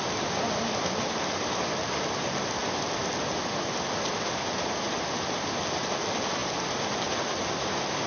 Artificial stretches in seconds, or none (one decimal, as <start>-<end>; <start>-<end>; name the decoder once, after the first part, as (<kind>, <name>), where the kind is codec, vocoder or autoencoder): none